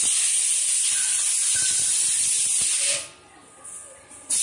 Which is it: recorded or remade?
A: recorded